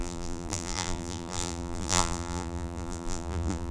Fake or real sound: fake